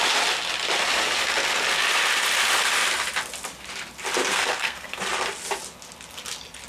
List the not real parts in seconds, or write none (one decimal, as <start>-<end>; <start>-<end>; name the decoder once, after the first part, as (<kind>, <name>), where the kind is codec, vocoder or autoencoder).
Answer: 4.3-5.0 (codec, SNAC)